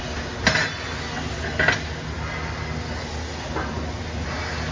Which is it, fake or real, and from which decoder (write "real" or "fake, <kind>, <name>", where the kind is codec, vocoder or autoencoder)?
real